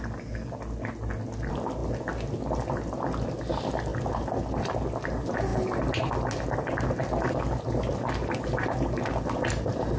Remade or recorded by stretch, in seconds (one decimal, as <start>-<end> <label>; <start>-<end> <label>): 0.0-10.0 recorded